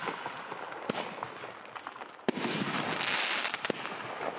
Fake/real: real